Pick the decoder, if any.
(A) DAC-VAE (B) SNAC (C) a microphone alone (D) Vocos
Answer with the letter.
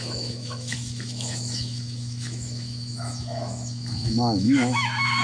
A